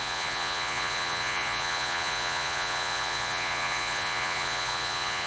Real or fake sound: fake